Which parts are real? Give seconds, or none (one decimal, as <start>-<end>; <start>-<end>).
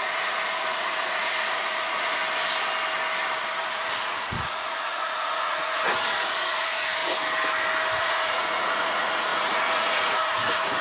2.2-3.4; 7.0-8.0